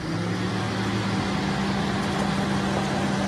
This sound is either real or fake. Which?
real